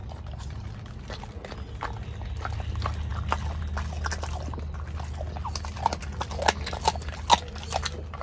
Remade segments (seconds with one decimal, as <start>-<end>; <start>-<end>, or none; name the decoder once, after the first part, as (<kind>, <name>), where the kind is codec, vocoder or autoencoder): 0.0-1.1 (vocoder, BigVGAN v2)